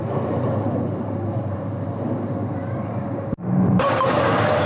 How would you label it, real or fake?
fake